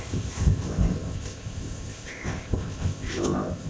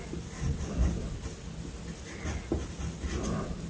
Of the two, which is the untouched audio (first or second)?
second